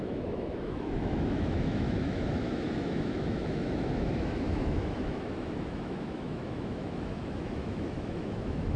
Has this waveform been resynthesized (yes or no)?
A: yes